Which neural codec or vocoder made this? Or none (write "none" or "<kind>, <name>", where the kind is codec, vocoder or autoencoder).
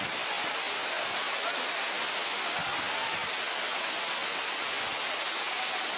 none